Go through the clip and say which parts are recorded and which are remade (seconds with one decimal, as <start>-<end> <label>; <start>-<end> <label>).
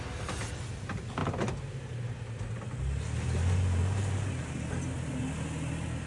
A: 0.0-6.1 recorded